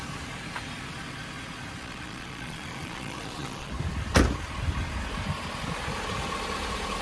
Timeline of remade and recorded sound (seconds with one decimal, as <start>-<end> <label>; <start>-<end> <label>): 0.0-1.8 recorded; 1.8-3.7 remade; 3.7-7.0 recorded